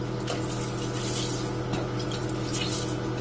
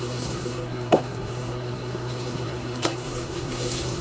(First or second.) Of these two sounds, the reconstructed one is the second